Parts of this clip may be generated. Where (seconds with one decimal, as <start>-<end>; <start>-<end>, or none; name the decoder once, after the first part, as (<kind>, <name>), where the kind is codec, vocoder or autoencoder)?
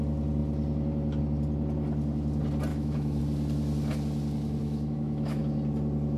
2.7-3.2 (autoencoder, DAC-VAE); 4.6-5.4